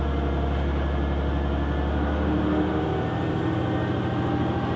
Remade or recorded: recorded